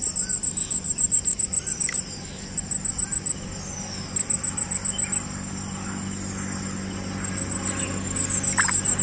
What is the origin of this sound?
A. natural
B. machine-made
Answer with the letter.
A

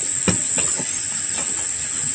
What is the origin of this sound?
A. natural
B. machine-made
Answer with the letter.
A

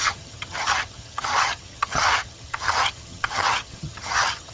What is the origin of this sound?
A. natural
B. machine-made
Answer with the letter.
B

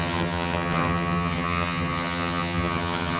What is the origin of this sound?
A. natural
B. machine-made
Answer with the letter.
B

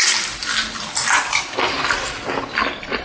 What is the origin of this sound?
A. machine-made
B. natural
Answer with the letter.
B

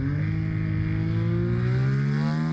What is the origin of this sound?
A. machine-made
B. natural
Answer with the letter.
B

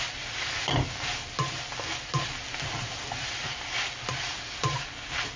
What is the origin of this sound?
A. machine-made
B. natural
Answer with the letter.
B